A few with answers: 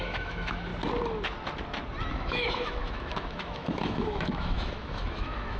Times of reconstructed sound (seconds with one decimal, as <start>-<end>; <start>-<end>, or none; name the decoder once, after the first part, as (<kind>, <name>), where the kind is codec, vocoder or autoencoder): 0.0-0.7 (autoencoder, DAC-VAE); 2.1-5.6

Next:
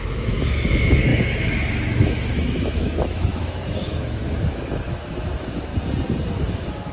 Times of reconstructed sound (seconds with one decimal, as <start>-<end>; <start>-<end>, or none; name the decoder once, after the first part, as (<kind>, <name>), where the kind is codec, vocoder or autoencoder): 0.0-5.7 (autoencoder, DAC-VAE); 6.4-6.9

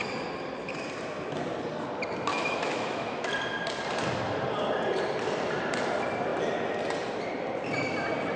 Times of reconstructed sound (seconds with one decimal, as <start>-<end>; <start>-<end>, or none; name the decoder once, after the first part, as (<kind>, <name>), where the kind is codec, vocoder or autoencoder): 2.3-3.3 (autoencoder, DAC-VAE)

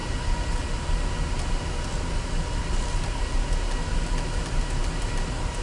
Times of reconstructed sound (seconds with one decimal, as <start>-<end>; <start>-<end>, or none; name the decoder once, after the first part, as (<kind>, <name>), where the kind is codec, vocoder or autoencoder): none

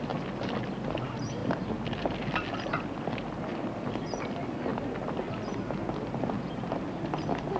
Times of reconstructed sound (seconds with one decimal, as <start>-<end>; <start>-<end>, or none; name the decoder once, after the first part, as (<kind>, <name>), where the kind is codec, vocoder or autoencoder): none

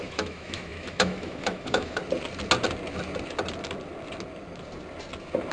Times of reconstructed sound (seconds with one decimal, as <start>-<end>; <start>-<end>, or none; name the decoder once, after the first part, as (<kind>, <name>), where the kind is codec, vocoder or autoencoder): 0.0-2.0 (autoencoder, DAC-VAE)

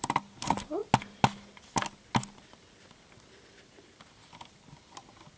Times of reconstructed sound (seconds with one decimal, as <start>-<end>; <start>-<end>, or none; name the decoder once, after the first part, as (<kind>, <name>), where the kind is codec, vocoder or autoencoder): none